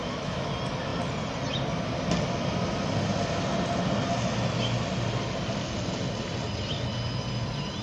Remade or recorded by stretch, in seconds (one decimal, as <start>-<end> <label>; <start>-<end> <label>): 0.0-0.5 remade; 0.5-7.8 recorded